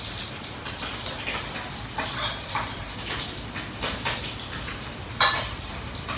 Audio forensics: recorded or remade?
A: recorded